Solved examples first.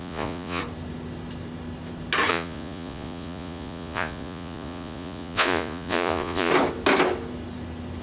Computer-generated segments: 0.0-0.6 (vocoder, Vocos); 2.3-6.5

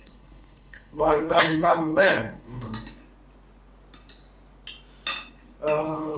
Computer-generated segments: 0.0-2.7 (codec, HILCodec); 5.8-6.2

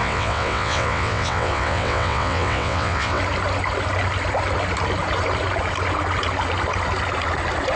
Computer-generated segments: 0.0-3.2 (vocoder, WaveNeXt)